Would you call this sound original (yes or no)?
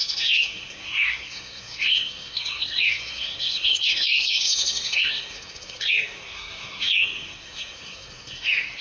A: no